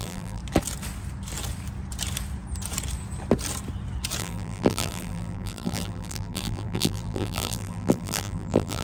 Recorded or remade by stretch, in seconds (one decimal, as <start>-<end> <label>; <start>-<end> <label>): 0.0-0.4 remade; 0.4-4.2 recorded; 4.2-8.8 remade